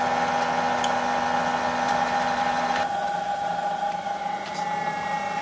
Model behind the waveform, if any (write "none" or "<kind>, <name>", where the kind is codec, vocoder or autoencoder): none